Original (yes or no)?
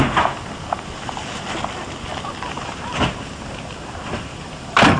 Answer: yes